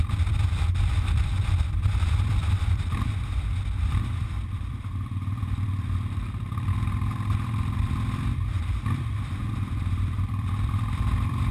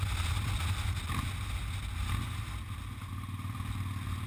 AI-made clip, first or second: first